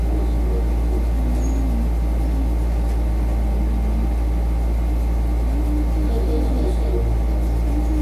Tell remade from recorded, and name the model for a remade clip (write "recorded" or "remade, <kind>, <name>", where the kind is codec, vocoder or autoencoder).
recorded